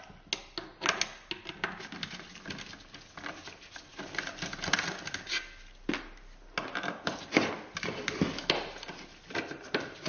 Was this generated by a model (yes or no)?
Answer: no